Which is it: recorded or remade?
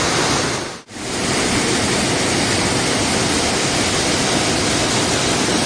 recorded